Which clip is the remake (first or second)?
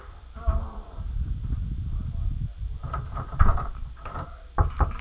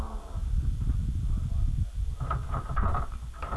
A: first